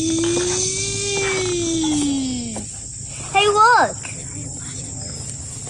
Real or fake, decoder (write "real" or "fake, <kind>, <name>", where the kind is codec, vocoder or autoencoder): real